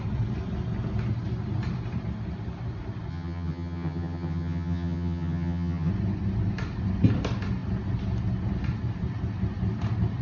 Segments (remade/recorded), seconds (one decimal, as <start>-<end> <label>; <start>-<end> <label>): 0.0-3.1 recorded; 3.1-5.9 remade; 5.9-10.2 recorded